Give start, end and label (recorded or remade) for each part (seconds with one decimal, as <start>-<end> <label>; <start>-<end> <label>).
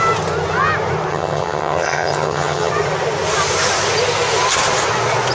0.0-1.1 recorded; 1.1-2.7 remade; 2.7-5.3 recorded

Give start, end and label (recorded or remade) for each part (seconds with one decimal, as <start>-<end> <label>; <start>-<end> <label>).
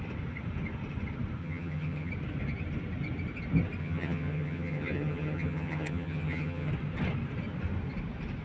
0.0-1.4 recorded; 1.4-2.1 remade; 2.1-3.8 recorded; 3.8-6.7 remade; 6.7-8.4 recorded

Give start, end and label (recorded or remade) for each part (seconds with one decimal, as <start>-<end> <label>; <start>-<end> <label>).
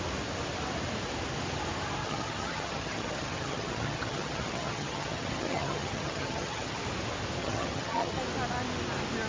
0.0-2.0 recorded; 2.0-6.8 remade; 6.8-7.4 recorded; 7.4-8.2 remade; 8.2-9.3 recorded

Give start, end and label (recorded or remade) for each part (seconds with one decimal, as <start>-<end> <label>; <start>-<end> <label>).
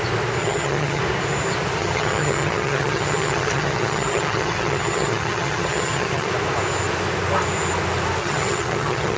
0.0-0.4 recorded; 0.4-1.0 remade; 1.0-1.8 recorded; 1.8-6.3 remade; 6.3-8.2 recorded; 8.2-9.2 remade